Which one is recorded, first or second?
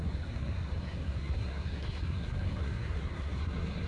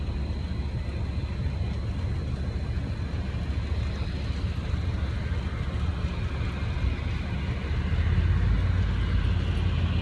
second